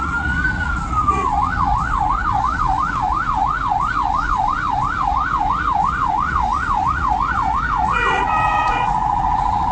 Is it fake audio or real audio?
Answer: fake